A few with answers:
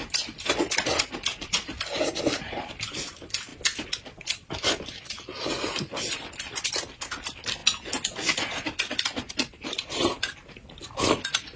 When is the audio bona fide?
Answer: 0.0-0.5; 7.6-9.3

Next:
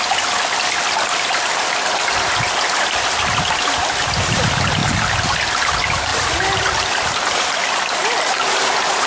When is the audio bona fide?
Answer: 0.0-6.1; 7.6-9.1

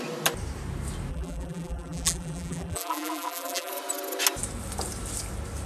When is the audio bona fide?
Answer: 0.0-1.1; 3.7-5.7

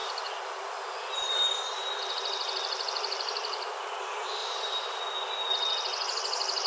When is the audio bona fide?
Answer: 4.0-4.4; 5.0-6.7

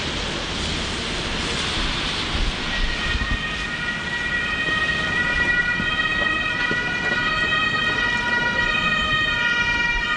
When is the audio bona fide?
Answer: 0.0-10.2

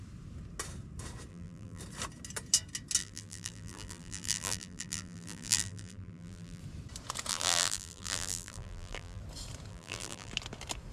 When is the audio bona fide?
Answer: 0.0-1.3; 1.8-3.0; 6.6-7.3; 9.2-9.7; 10.3-10.9

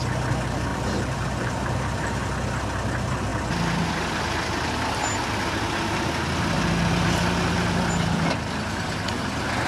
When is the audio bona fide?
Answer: 0.0-0.7; 2.3-9.7